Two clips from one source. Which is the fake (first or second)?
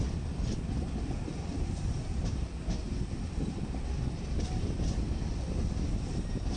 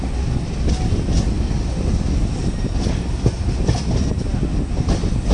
first